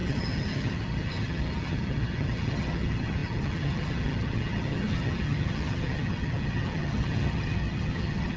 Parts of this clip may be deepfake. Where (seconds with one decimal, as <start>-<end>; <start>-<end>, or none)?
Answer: 0.0-8.4